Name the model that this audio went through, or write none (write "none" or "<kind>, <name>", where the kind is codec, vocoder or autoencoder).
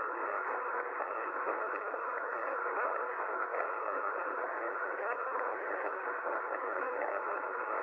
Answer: codec, SNAC